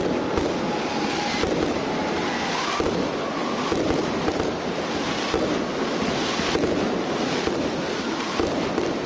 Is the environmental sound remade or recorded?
recorded